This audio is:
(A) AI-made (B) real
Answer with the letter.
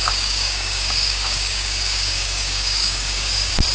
A